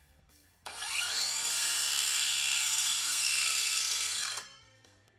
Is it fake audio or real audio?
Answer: fake